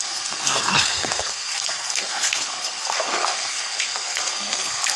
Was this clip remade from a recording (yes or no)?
yes